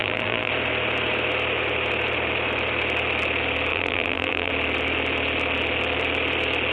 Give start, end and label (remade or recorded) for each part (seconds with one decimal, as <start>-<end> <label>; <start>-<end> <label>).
0.0-0.5 remade; 0.5-3.7 recorded; 3.7-4.5 remade; 4.5-6.7 recorded